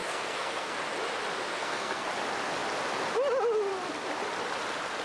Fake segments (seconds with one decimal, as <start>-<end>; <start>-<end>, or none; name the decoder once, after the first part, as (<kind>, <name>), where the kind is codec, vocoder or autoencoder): 0.0-0.8 (codec, SNAC); 1.6-2.1